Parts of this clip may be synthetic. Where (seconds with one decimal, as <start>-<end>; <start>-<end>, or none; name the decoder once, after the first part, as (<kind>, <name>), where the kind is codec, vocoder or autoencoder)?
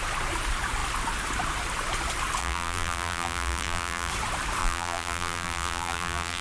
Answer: 2.4-4.1 (vocoder, BigVGAN v2); 4.6-6.4